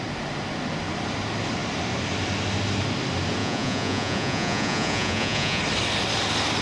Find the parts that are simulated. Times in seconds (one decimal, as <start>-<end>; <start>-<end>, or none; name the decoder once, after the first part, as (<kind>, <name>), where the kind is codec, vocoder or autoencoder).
3.4-5.6 (vocoder, Vocos)